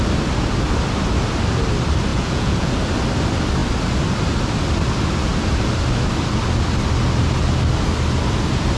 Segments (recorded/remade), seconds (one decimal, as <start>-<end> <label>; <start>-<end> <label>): 0.0-2.1 recorded; 2.1-2.7 remade; 2.7-8.8 recorded